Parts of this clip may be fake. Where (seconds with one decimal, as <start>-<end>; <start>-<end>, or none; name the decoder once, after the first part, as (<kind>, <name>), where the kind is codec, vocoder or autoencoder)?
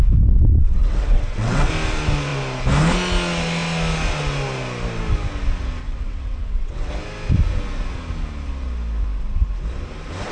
0.5-1.7 (vocoder, WaveNeXt); 5.8-6.9